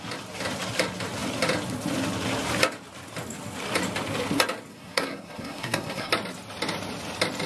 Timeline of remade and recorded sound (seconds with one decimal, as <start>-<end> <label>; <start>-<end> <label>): 0.0-4.7 recorded; 4.7-6.1 remade; 6.1-7.5 recorded